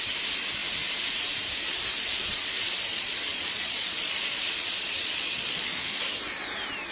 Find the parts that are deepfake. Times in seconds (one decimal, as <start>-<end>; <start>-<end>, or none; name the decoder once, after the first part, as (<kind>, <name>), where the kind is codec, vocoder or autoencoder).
2.9-6.1 (vocoder, Vocos)